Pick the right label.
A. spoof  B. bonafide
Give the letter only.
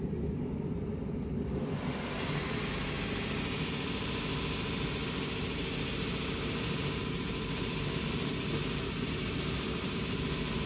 B